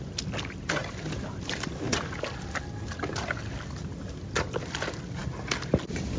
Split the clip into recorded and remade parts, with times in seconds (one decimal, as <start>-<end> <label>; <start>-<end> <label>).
0.0-6.2 recorded